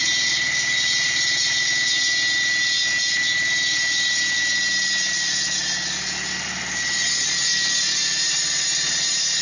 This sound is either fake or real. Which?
real